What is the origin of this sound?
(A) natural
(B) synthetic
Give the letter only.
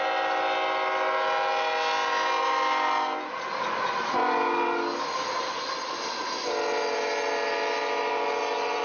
A